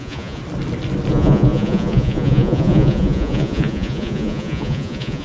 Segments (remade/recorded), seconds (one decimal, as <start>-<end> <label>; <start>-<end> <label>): 0.0-0.4 remade; 0.4-1.1 recorded; 1.1-5.2 remade